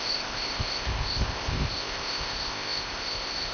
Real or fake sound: fake